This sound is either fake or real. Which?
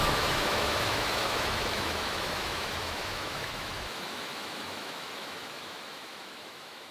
fake